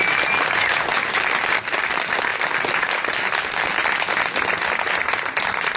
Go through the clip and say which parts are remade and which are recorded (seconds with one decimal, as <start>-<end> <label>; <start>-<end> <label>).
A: 0.0-2.3 recorded; 2.3-3.7 remade; 3.7-5.8 recorded